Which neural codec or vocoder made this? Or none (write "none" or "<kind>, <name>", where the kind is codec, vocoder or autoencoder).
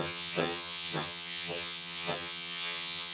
vocoder, HiFi-GAN